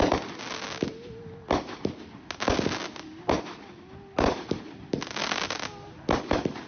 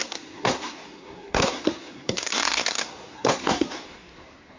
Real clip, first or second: first